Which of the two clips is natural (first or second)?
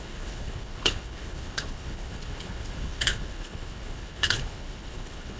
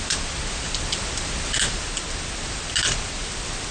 second